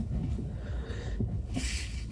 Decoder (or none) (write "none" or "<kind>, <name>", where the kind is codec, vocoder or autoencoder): codec, HILCodec